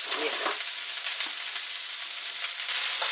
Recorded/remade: recorded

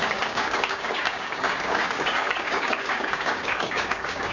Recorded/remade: remade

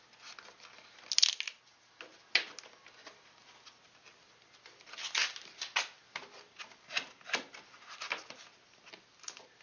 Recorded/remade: recorded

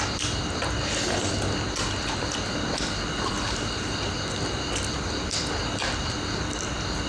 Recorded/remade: recorded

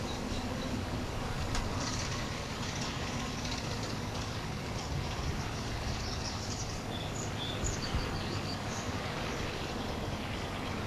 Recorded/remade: remade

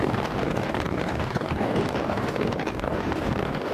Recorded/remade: remade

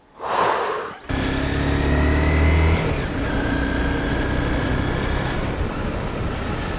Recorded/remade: recorded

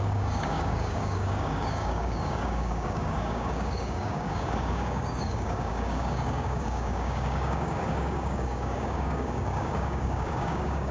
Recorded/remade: remade